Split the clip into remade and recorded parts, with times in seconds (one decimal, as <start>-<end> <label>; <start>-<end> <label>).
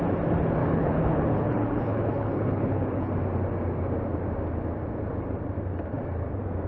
0.0-0.6 recorded; 0.6-3.1 remade; 3.1-6.7 recorded